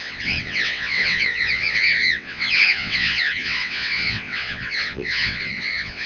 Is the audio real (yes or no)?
no